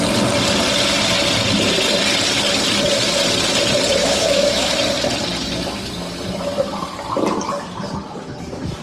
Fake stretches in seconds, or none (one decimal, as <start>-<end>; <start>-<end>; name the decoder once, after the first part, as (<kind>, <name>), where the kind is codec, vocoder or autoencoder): 4.0-4.7 (autoencoder, DAC-VAE)